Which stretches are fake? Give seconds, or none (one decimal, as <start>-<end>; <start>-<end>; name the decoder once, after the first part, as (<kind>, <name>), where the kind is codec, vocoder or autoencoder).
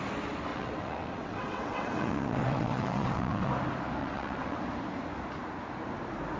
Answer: 0.5-3.5 (vocoder, WaveNeXt); 4.0-4.6